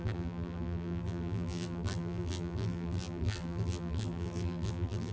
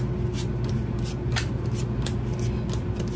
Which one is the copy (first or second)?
first